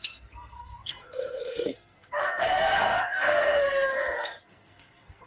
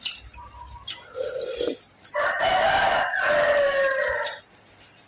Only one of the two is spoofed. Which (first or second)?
first